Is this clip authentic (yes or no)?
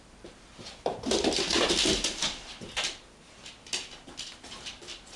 no